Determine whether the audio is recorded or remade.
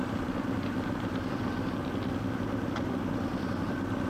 recorded